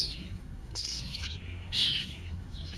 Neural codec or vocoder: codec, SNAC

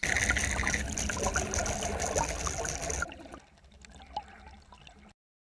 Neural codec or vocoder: none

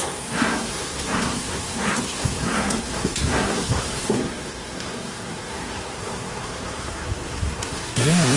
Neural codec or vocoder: codec, SNAC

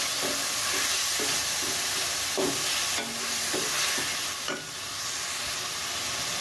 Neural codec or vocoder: none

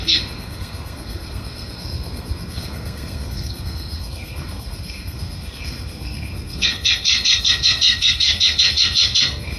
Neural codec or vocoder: codec, SNAC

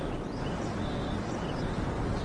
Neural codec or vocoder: none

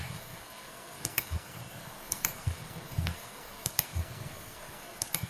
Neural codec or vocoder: codec, SNAC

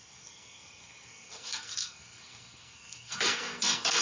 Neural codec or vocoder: codec, SNAC